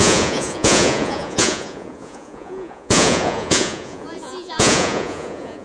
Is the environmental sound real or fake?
fake